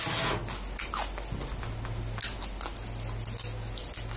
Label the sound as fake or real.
real